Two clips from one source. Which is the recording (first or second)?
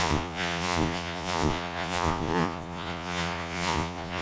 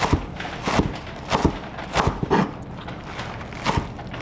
second